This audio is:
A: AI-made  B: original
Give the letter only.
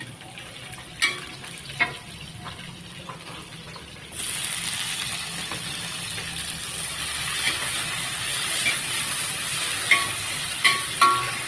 B